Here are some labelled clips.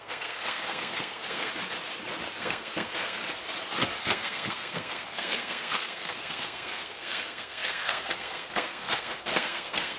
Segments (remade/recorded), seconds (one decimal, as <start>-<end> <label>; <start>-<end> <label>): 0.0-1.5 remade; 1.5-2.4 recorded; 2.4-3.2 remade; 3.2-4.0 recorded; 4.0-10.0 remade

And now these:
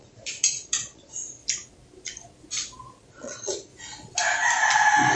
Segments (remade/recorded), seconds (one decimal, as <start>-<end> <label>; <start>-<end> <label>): 0.0-1.4 remade; 1.4-3.1 recorded; 3.1-3.7 remade; 3.7-5.2 recorded

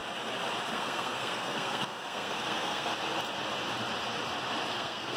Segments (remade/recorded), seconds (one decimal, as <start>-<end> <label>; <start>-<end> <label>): 0.0-0.7 recorded; 0.7-2.9 remade; 2.9-4.7 recorded; 4.7-5.2 remade

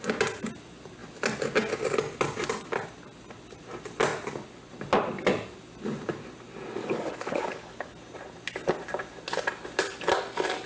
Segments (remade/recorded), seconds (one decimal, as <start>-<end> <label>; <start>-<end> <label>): 0.0-6.8 recorded; 6.8-7.9 remade; 7.9-10.7 recorded

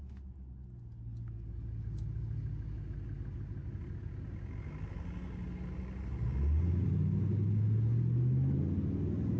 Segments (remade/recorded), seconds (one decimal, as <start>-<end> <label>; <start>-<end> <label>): 0.0-9.4 recorded

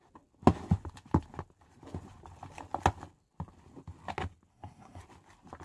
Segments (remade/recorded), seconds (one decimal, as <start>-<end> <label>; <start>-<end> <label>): 0.0-4.5 recorded; 4.5-5.0 remade; 5.0-5.6 recorded

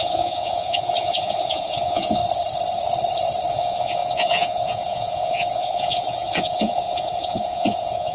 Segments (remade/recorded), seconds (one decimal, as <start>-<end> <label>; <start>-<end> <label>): 0.0-2.2 remade; 2.2-3.5 recorded; 3.5-8.1 remade